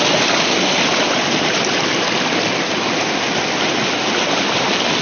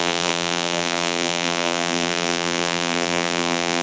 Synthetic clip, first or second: second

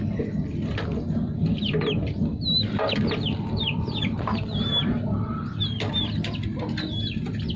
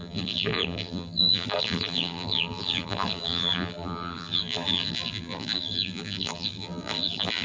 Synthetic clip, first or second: second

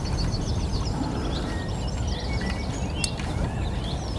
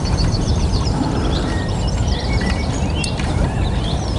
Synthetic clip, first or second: second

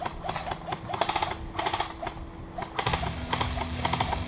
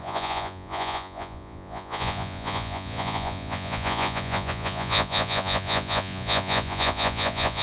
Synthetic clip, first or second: second